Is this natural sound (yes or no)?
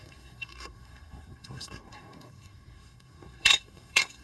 no